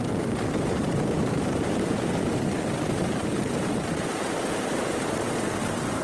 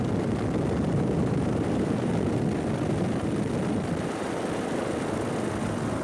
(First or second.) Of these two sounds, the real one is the second